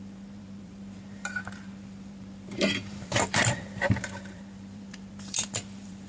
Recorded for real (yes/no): no